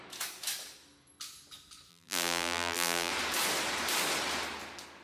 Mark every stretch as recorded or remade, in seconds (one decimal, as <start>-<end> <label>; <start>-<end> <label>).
0.0-1.9 recorded; 1.9-3.1 remade; 3.1-5.0 recorded